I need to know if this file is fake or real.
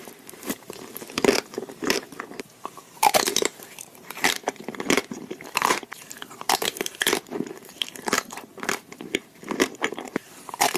fake